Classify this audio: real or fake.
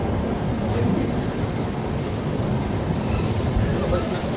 real